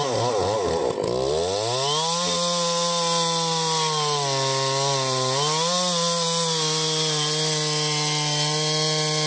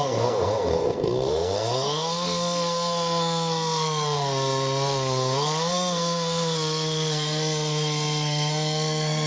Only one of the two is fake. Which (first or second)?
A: second